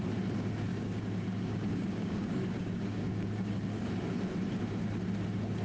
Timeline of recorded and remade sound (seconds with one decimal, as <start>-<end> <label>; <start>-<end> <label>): 0.0-0.7 recorded; 0.7-4.1 remade; 4.1-5.6 recorded